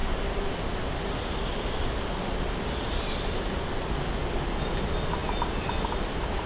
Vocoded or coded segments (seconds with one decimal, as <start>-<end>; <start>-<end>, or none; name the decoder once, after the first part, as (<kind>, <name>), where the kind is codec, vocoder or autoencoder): none